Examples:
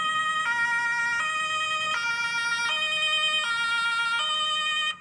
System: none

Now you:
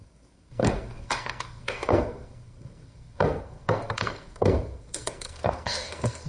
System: codec, SNAC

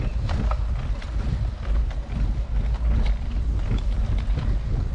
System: none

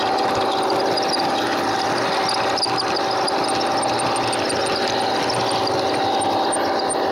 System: none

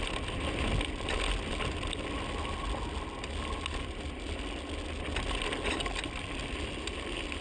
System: none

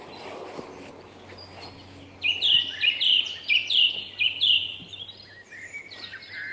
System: none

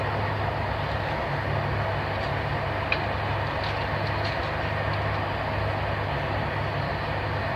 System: none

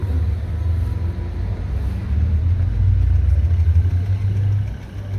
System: none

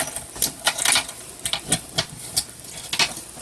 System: none